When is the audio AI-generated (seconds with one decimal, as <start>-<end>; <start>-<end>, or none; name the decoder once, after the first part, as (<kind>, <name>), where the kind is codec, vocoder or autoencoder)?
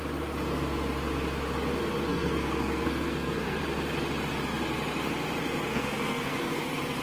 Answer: 2.1-3.6 (codec, SNAC); 5.7-6.6